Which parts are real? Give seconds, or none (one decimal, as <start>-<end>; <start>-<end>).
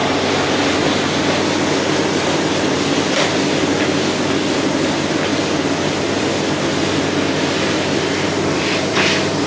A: 0.0-2.5; 4.3-5.3